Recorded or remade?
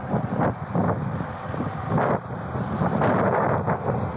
recorded